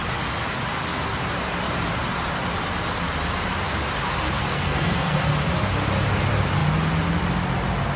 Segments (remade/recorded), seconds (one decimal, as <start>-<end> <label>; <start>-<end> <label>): 0.0-4.4 recorded; 4.4-5.3 remade; 5.3-8.0 recorded